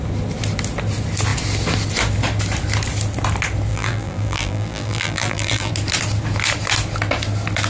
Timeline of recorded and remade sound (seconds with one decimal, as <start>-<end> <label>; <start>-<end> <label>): 0.0-3.7 recorded; 3.7-5.7 remade; 5.7-7.7 recorded